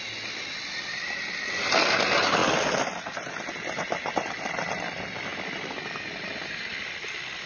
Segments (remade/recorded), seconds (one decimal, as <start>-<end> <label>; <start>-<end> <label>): 0.0-7.5 recorded